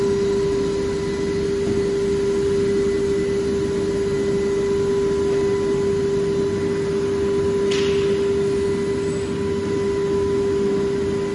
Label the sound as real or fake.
real